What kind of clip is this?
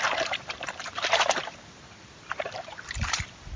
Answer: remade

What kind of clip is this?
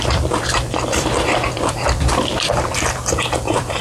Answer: remade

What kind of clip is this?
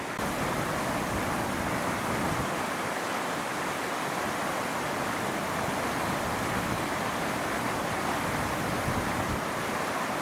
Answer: remade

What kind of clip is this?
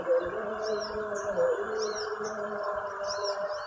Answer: remade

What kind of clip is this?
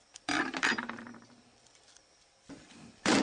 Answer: remade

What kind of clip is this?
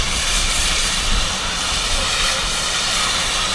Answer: remade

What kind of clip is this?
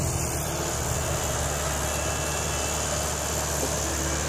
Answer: recorded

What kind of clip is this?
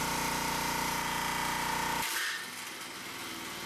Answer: remade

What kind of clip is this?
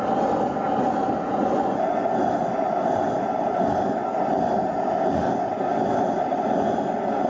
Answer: recorded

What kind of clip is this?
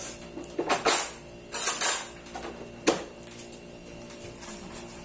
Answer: recorded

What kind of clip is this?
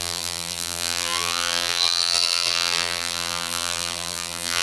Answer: remade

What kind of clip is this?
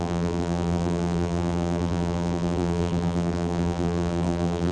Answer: remade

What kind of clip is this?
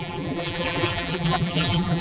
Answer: remade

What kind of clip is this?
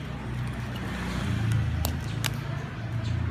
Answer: recorded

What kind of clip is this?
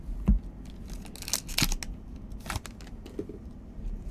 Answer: recorded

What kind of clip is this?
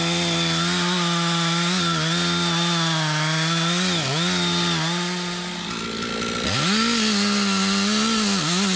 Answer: recorded